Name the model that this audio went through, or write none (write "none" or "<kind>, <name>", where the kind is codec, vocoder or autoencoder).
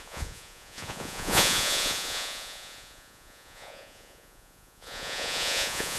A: vocoder, Vocos